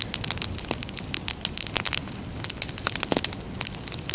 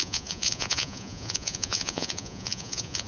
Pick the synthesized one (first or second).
second